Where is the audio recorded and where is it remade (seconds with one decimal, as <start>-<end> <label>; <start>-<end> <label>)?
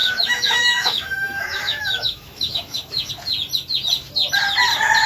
0.0-3.1 remade; 3.1-5.1 recorded